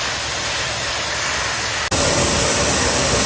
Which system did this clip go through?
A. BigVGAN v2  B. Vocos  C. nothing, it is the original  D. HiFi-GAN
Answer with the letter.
C